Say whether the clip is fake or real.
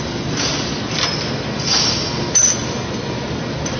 real